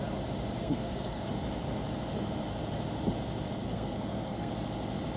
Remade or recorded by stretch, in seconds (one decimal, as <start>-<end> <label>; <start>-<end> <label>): 0.0-0.6 recorded; 0.6-1.3 remade; 1.3-3.6 recorded; 3.6-4.5 remade; 4.5-5.2 recorded